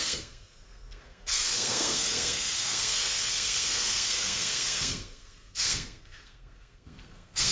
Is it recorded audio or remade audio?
remade